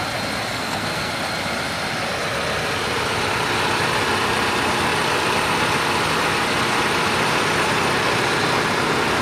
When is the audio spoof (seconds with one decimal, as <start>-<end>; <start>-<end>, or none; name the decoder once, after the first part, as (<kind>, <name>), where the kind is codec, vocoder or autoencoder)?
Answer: 0.5-1.1 (codec, SNAC)